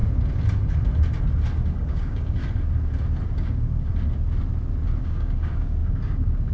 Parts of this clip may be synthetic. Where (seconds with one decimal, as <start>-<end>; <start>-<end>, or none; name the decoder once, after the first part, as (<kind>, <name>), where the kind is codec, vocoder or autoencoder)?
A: 1.9-2.4 (codec, DAC); 3.3-3.9; 5.0-6.5